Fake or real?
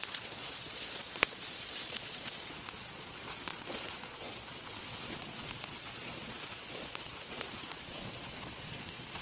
fake